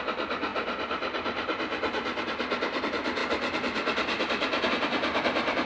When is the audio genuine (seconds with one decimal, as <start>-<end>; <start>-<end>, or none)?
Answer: 0.0-5.7